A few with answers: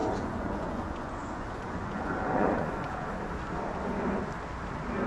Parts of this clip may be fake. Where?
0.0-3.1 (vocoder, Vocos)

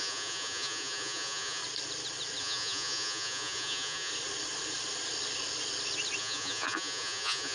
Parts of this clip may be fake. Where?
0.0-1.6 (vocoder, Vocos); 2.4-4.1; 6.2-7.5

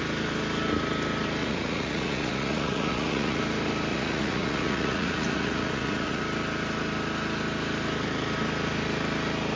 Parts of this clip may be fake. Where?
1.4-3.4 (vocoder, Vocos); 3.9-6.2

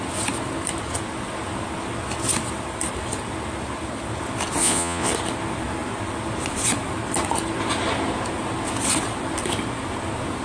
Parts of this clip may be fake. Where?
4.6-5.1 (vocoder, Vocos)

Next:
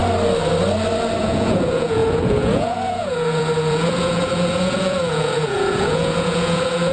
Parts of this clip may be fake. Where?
1.2-6.9 (vocoder, Vocos)